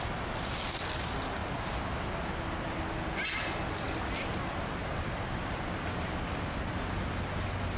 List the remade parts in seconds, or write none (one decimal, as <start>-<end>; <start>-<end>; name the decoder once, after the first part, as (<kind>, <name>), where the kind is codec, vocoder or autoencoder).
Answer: 4.8-5.6 (vocoder, BigVGAN v2)